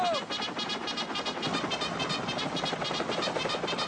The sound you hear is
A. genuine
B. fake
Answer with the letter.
A